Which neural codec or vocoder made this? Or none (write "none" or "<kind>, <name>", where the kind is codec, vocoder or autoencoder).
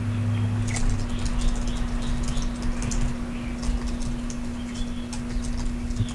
none